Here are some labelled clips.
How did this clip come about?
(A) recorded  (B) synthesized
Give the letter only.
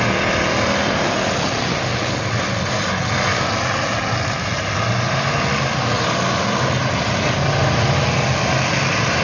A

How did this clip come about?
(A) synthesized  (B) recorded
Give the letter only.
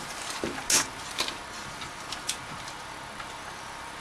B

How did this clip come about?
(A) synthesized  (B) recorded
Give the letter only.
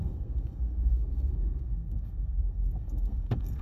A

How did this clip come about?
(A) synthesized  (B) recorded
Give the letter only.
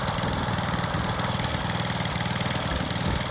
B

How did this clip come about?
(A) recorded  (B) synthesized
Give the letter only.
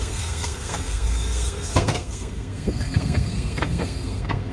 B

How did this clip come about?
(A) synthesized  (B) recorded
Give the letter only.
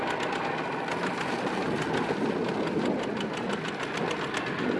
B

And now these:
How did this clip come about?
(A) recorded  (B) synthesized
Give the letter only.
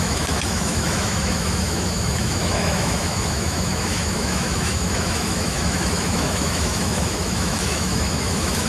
B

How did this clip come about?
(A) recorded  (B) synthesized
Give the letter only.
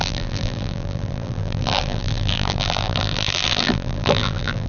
B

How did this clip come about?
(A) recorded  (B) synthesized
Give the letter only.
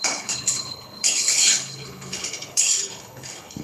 B